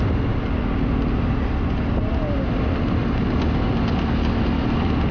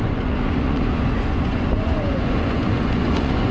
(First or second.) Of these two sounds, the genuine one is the first